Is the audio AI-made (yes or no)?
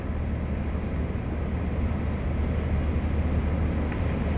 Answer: no